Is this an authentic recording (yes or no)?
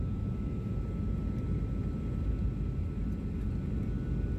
yes